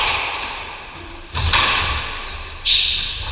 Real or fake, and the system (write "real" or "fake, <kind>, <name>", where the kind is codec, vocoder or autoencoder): real